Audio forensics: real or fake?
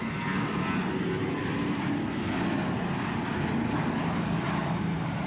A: real